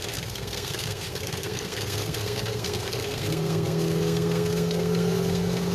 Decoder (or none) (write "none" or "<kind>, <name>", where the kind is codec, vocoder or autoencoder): codec, SNAC